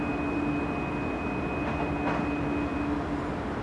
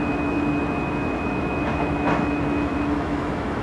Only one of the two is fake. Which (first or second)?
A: second